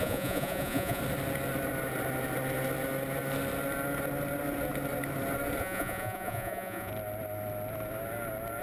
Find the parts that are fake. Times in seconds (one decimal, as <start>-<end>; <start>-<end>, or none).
0.0-1.0; 5.6-6.9